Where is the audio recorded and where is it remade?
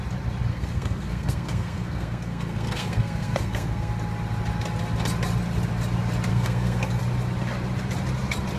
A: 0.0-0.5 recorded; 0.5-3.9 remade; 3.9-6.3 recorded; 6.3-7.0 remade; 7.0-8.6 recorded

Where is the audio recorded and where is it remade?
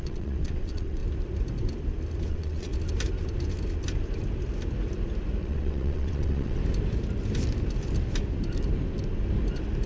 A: 0.0-1.0 remade; 1.0-2.3 recorded; 2.3-2.7 remade; 2.7-5.4 recorded; 5.4-6.6 remade; 6.6-9.9 recorded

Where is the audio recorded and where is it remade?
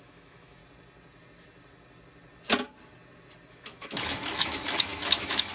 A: 0.0-0.6 remade; 0.6-3.5 recorded; 3.5-5.5 remade